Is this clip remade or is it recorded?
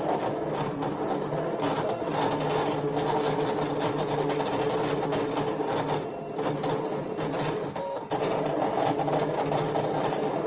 recorded